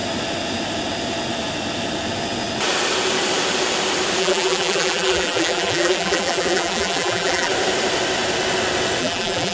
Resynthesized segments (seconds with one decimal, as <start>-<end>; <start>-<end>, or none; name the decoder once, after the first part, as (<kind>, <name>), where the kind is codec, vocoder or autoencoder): 4.2-7.5 (vocoder, BigVGAN v2); 9.0-9.5